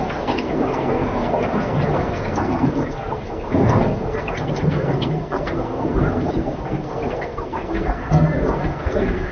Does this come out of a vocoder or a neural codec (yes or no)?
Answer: yes